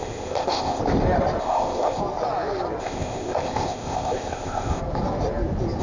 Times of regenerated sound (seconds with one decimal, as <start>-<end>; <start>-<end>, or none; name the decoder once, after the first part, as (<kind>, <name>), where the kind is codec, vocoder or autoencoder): 0.0-0.8 (codec, ZipCodec); 1.4-2.0; 2.8-4.8